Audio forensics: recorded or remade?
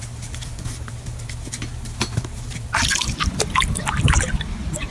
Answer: recorded